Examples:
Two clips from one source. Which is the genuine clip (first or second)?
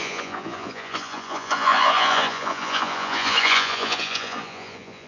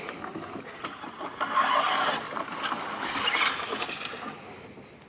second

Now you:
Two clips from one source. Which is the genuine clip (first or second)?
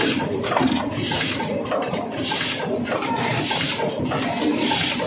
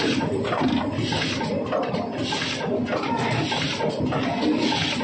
second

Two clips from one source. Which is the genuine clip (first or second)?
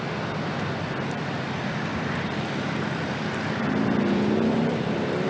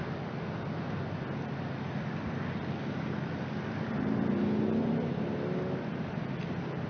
second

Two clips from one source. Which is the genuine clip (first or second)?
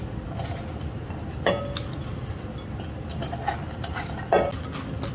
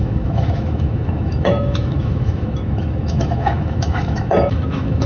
first